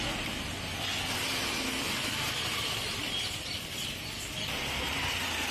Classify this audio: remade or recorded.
remade